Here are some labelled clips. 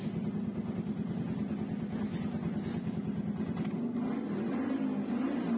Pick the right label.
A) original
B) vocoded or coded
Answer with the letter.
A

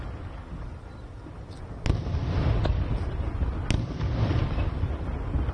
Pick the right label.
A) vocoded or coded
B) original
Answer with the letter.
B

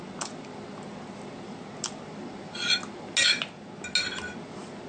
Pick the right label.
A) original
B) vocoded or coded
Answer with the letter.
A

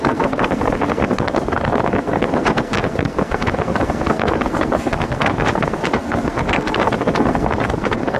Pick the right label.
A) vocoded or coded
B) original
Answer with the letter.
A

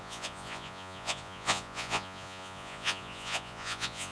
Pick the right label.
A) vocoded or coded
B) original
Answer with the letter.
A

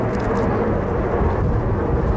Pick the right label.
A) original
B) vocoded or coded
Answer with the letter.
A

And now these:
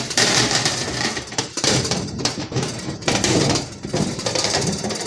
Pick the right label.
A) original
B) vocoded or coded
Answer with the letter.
B